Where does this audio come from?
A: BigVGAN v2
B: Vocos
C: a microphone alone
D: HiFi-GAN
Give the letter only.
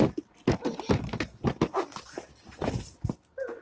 C